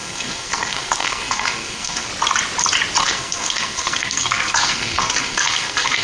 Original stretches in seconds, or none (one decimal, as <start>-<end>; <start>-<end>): 2.1-3.0